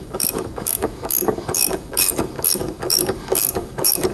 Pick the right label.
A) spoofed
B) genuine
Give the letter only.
A